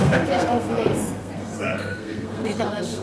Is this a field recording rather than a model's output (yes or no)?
no